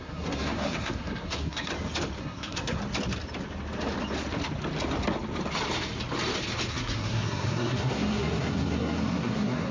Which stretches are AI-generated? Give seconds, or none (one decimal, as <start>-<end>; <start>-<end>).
0.0-1.7; 2.2-2.8; 6.7-9.7